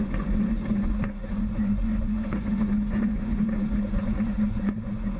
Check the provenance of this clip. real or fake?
fake